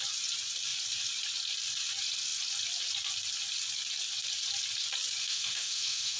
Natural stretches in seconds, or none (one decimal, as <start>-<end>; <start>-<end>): 0.0-5.2